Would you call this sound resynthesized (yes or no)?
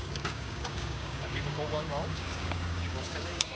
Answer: yes